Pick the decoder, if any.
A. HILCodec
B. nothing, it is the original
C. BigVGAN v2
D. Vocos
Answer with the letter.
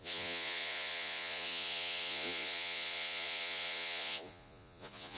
D